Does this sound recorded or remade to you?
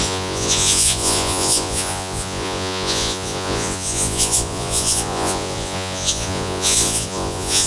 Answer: remade